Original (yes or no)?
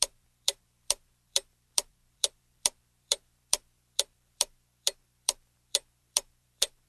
no